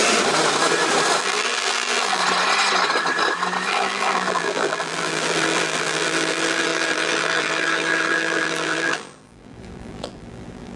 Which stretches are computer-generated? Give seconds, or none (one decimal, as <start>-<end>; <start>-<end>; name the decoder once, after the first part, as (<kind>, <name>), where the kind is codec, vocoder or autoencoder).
1.2-2.2 (vocoder, BigVGAN v2); 3.7-10.8